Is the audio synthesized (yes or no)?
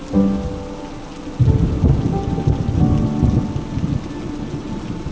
no